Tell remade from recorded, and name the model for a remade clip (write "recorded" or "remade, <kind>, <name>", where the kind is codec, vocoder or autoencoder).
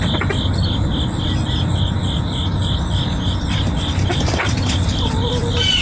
recorded